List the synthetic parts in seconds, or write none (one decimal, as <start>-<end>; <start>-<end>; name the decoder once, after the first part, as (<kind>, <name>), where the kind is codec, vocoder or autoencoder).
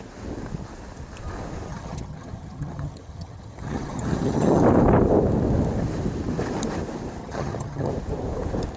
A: 1.7-4.6 (vocoder, HiFi-GAN); 7.2-7.9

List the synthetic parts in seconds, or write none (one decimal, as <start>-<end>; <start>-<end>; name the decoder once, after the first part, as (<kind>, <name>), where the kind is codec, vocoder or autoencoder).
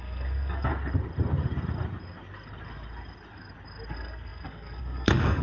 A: 0.0-0.7 (codec, SNAC); 3.9-5.4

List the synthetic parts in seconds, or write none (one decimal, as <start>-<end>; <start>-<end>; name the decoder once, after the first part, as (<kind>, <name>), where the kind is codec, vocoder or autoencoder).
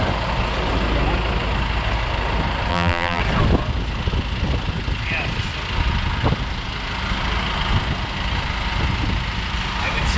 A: 2.7-3.2 (vocoder, BigVGAN v2)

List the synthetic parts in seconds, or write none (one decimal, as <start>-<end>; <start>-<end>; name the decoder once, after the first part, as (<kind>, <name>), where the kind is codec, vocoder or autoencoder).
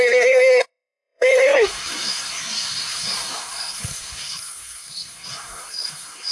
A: 0.0-6.3 (codec, SNAC)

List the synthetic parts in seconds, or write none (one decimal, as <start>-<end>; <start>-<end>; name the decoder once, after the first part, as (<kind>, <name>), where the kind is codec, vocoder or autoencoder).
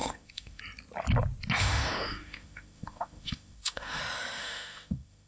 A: 0.0-0.6 (autoencoder, DAC-VAE); 1.6-4.0; 4.4-5.3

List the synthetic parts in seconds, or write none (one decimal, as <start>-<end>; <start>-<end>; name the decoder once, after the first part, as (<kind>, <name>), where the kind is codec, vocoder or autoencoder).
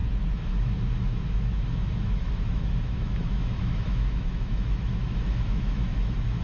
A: 0.0-6.4 (autoencoder, DAC-VAE)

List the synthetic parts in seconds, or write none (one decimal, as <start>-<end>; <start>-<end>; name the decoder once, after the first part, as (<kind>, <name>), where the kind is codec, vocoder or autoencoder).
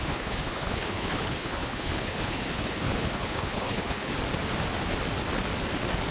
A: 0.0-4.1 (codec, HILCodec)